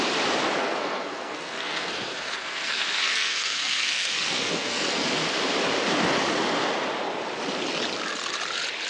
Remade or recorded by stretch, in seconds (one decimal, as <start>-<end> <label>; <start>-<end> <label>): 0.0-0.6 recorded; 0.6-5.1 remade; 5.1-8.9 recorded

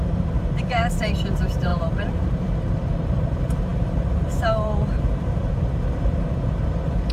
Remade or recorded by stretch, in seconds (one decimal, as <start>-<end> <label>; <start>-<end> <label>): 0.0-7.1 remade

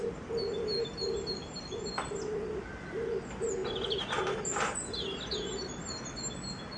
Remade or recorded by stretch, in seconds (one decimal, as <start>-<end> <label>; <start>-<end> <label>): 0.0-6.8 recorded

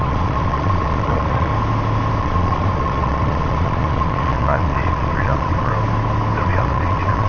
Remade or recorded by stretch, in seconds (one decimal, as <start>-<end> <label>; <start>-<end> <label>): 0.0-1.5 remade; 1.5-2.2 recorded; 2.2-5.7 remade; 5.7-6.4 recorded; 6.4-7.3 remade